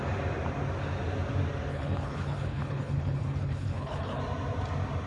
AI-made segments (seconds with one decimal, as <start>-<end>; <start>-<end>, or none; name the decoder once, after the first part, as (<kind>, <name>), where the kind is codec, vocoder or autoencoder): 1.7-4.2 (codec, HILCodec)